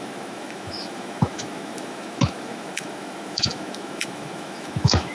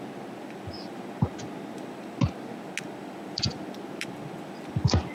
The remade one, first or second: first